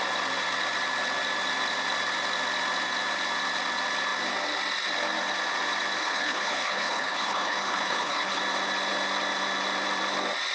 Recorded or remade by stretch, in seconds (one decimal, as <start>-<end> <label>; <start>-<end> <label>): 0.0-6.0 recorded; 6.0-8.4 remade; 8.4-10.5 recorded